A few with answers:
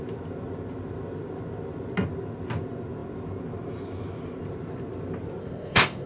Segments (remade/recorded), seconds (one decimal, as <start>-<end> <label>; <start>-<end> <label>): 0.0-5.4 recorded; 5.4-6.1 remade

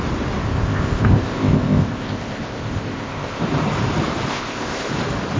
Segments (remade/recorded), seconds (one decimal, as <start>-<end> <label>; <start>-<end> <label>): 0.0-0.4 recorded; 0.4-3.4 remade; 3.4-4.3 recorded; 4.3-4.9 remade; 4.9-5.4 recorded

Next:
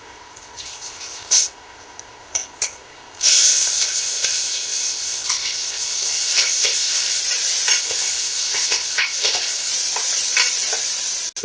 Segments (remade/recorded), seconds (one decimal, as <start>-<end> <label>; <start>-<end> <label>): 0.0-7.2 remade; 7.2-7.8 recorded; 7.8-9.7 remade; 9.7-11.4 recorded

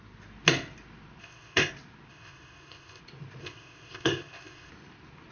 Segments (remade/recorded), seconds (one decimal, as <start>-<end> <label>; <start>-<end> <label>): 0.0-1.2 recorded; 1.2-1.7 remade; 1.7-2.1 recorded; 2.1-3.0 remade; 3.0-3.4 recorded; 3.4-4.7 remade; 4.7-5.3 recorded